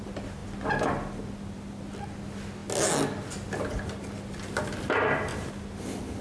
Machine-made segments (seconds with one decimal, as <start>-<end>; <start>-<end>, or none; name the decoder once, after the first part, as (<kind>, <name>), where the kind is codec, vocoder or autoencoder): none